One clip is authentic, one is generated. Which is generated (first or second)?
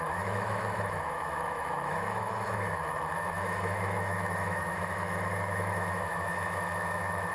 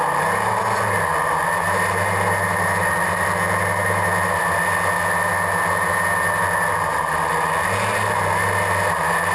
first